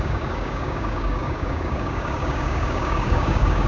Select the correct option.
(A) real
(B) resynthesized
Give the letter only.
B